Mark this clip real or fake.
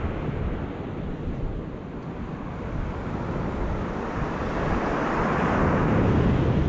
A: real